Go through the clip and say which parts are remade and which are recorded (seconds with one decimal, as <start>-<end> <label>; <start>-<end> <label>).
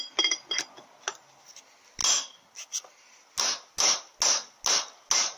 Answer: 0.0-5.4 recorded